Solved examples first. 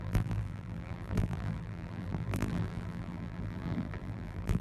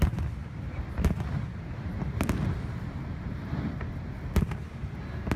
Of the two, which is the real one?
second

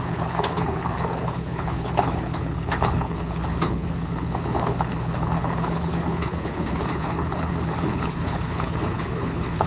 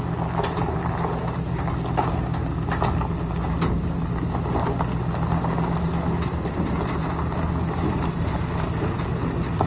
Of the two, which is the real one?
second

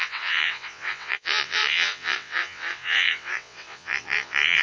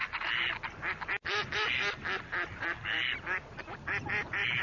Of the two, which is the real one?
second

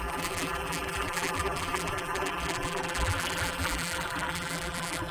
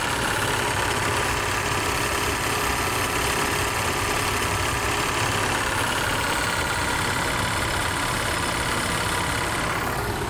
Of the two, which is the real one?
second